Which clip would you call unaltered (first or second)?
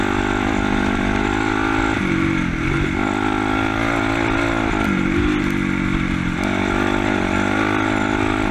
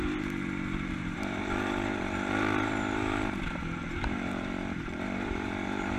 first